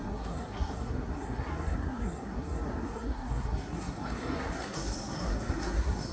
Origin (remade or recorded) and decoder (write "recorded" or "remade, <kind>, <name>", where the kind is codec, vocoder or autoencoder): remade, codec, SNAC